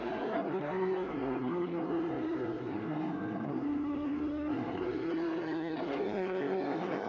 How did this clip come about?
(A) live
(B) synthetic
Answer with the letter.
B